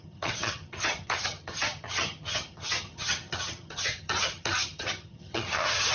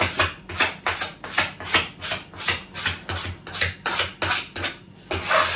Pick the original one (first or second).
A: second